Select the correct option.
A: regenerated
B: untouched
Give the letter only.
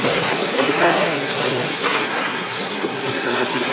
A